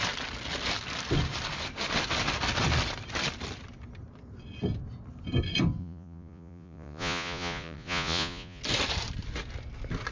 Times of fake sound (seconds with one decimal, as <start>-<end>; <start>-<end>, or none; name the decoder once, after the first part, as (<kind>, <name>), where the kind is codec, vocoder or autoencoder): 5.8-8.6 (vocoder, Vocos)